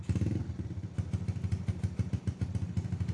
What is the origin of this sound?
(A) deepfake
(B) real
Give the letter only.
B